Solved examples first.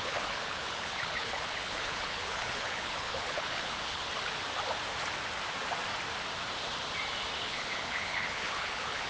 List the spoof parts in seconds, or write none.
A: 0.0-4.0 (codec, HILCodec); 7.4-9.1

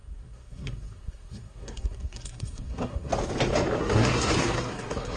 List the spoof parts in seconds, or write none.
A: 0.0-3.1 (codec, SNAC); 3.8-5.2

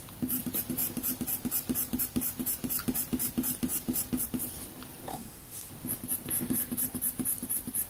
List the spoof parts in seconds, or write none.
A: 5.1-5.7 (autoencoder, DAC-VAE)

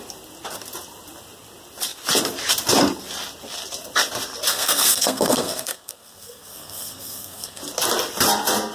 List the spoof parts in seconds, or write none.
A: 4.5-7.6 (codec, SNAC)

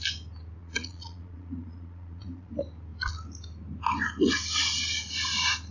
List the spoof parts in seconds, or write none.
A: 0.6-2.5 (vocoder, Vocos)